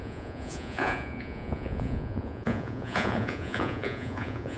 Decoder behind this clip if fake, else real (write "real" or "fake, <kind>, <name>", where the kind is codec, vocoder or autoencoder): fake, vocoder, Vocos